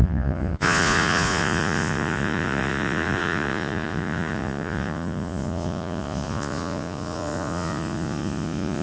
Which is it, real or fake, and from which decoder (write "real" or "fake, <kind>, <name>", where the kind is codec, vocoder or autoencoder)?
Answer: fake, vocoder, Vocos